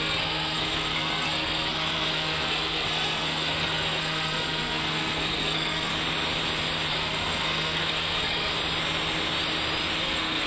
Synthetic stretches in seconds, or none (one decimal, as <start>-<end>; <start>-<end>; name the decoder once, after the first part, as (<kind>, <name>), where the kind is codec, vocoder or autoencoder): 0.0-5.9 (codec, SNAC); 6.9-8.5; 10.0-10.5